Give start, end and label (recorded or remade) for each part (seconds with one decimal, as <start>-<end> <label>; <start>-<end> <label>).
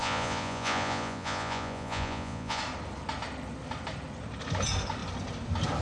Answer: 0.0-2.6 remade; 2.6-5.8 recorded